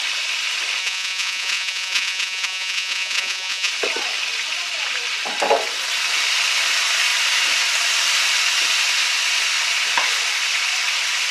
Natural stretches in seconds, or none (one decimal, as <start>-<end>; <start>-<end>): 0.0-0.8; 3.7-11.3